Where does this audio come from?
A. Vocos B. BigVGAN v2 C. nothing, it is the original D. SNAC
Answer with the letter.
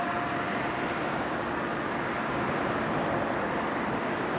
C